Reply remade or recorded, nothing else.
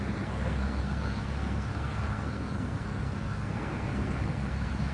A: remade